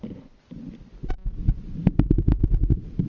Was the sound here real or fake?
real